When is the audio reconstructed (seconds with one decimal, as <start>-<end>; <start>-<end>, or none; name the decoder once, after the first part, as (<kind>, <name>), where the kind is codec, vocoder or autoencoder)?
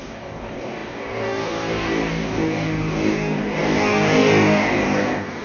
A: 0.0-5.4 (codec, DAC)